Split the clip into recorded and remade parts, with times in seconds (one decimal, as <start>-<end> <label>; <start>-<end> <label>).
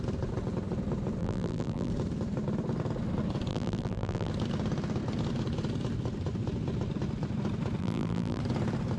0.0-1.2 recorded; 1.2-1.9 remade; 1.9-3.5 recorded; 3.5-4.3 remade; 4.3-7.8 recorded; 7.8-8.4 remade; 8.4-9.0 recorded